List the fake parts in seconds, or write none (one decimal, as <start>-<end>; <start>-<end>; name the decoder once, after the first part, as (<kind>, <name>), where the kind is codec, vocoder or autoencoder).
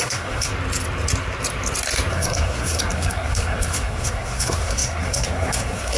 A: 0.0-0.5 (codec, SNAC); 2.1-6.0